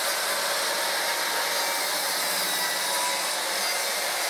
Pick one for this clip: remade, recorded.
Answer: recorded